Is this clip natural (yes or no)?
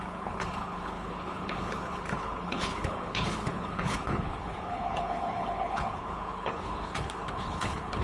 no